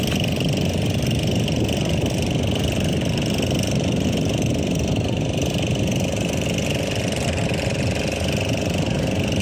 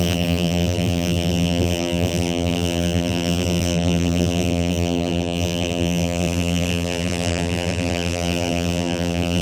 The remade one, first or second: second